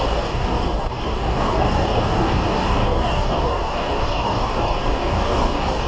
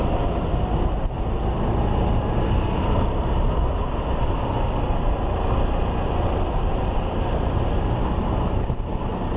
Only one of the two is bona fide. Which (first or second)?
second